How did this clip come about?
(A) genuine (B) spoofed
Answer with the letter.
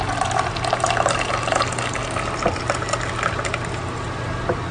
A